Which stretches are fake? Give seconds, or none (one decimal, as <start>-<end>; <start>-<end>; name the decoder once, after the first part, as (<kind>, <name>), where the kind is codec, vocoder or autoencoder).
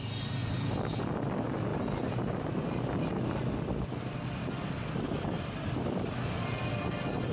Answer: 0.4-1.0 (vocoder, BigVGAN v2); 1.7-6.1